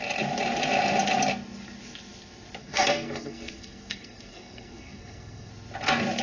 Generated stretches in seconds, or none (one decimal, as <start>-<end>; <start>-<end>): 2.6-5.5